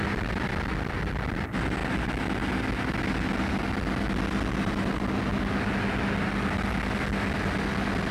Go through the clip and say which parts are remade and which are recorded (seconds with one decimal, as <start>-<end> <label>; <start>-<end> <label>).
0.0-8.1 recorded

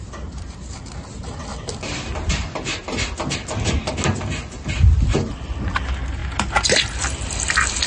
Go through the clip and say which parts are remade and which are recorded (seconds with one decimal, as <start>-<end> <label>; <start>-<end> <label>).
0.0-7.9 recorded

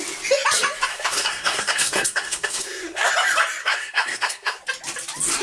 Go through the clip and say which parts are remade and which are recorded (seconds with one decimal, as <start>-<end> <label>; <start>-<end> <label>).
0.0-0.9 recorded; 0.9-3.1 remade; 3.1-3.6 recorded; 3.6-4.6 remade; 4.6-5.4 recorded

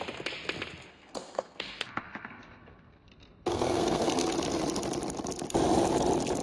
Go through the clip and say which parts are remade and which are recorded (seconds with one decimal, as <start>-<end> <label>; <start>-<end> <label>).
0.0-0.9 recorded; 0.9-3.1 remade; 3.1-3.5 recorded; 3.5-4.3 remade; 4.3-6.4 recorded

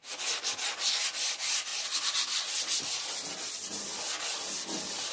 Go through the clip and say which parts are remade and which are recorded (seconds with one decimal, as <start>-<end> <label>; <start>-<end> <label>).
0.0-5.1 recorded

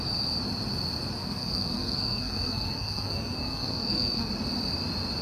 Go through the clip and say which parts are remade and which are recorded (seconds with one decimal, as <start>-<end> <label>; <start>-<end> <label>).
0.0-1.2 recorded; 1.2-4.3 remade; 4.3-5.2 recorded

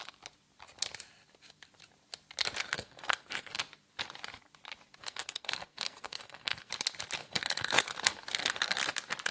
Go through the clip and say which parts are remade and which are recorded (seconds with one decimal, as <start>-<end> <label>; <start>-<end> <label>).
0.0-2.6 recorded; 2.6-3.6 remade; 3.6-5.0 recorded; 5.0-6.7 remade; 6.7-7.2 recorded; 7.2-8.8 remade; 8.8-9.3 recorded

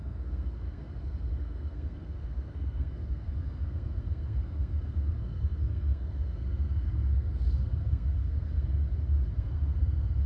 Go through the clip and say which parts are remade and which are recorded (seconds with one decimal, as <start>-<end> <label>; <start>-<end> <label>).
0.0-8.8 remade; 8.8-9.4 recorded; 9.4-10.3 remade